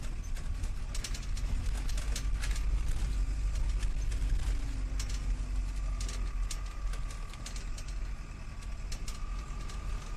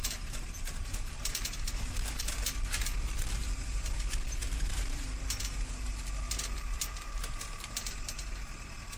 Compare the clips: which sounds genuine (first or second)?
first